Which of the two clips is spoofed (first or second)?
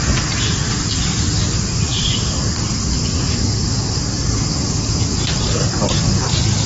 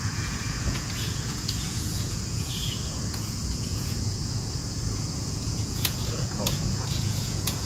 second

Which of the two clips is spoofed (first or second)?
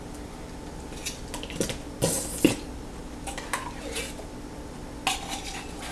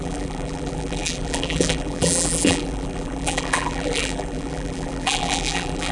second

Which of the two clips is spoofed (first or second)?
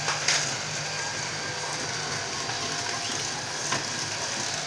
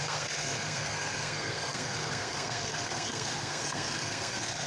second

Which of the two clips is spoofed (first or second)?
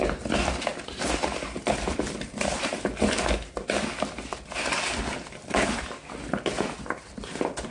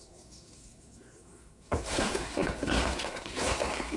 second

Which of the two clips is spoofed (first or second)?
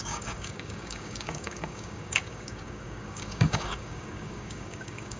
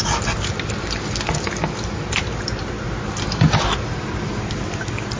first